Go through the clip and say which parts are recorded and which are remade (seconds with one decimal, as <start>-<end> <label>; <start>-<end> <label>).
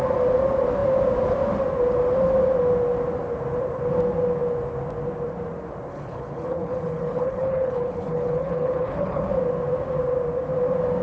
0.0-5.9 recorded; 5.9-9.3 remade; 9.3-11.0 recorded